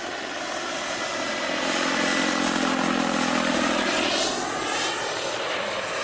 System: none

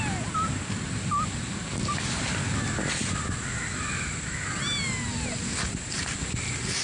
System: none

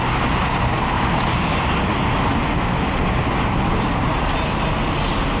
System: none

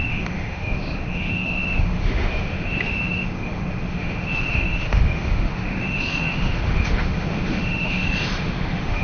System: autoencoder, DAC-VAE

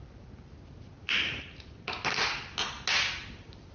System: none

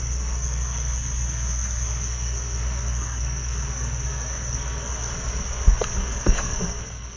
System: codec, SNAC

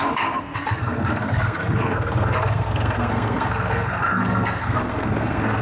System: codec, SNAC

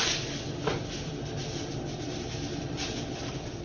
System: none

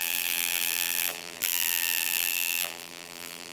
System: vocoder, BigVGAN v2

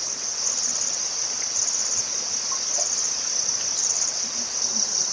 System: none